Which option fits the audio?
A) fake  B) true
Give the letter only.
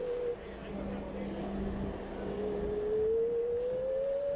B